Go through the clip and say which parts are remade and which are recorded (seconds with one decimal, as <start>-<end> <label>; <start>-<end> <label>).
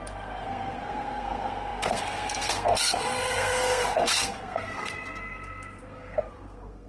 0.0-6.9 remade